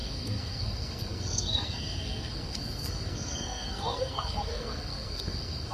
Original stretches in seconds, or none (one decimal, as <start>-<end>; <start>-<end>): none